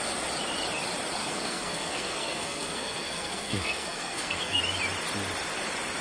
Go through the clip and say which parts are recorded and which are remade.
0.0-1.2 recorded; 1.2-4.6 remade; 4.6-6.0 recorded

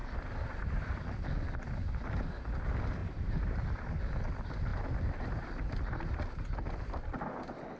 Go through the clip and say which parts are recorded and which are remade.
0.0-0.9 remade; 0.9-3.0 recorded; 3.0-4.0 remade; 4.0-7.8 recorded

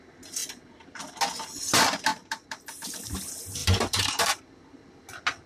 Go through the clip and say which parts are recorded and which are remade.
0.0-2.1 recorded; 2.1-3.1 remade; 3.1-3.6 recorded; 3.6-4.4 remade; 4.4-5.5 recorded